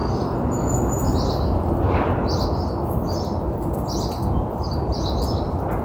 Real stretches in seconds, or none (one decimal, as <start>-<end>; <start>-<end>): 0.0-5.8